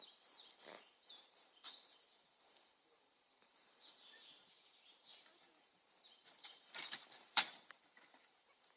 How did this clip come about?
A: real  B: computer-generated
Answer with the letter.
B